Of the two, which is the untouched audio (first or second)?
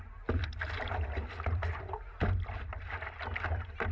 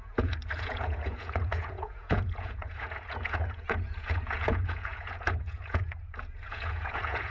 first